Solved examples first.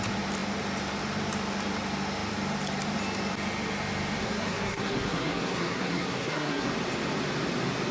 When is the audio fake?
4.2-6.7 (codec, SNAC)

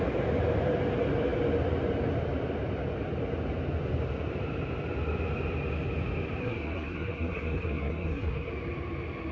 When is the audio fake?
6.4-8.5 (codec, SNAC)

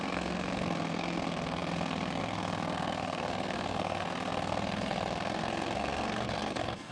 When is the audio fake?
0.0-6.9 (codec, SNAC)

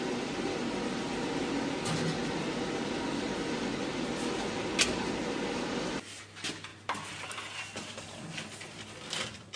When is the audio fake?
none

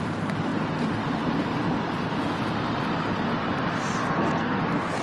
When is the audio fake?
4.0-4.6 (codec, SNAC)

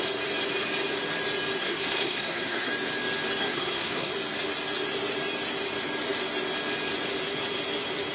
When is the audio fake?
1.6-2.7 (codec, SNAC); 3.4-4.1

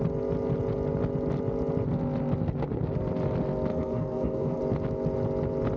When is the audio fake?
3.7-4.6 (codec, SNAC)